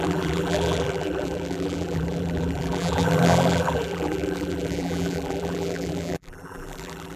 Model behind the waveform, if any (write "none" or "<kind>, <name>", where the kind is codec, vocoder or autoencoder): vocoder, BigVGAN v2